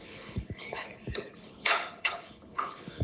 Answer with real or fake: fake